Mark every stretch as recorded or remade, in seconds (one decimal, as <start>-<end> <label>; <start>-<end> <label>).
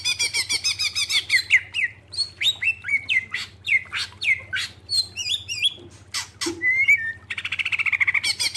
0.0-8.6 recorded